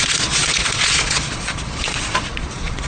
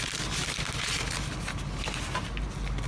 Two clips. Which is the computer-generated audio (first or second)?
first